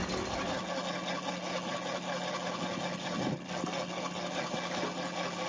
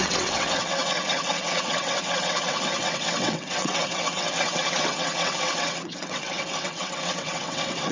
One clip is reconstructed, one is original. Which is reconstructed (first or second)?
second